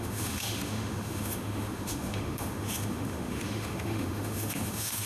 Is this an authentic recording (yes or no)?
no